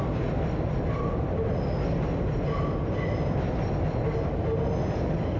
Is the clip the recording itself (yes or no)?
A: yes